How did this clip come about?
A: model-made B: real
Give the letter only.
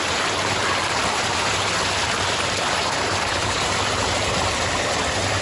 A